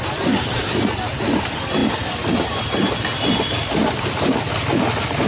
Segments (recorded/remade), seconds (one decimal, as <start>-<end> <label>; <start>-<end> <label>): 0.0-5.3 recorded